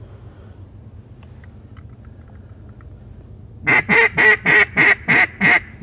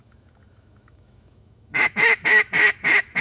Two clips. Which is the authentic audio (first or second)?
first